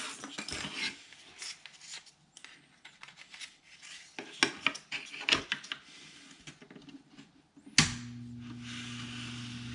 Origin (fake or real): real